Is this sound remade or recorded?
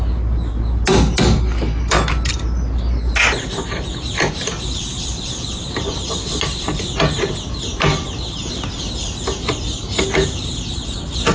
recorded